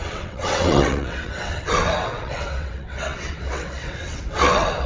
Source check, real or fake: fake